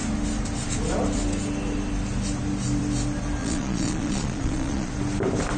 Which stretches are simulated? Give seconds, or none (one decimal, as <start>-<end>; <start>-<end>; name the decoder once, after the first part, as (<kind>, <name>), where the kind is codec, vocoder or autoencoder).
3.4-4.9 (vocoder, Vocos)